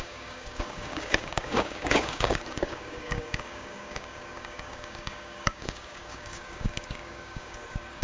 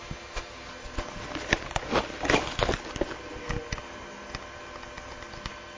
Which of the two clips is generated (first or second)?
first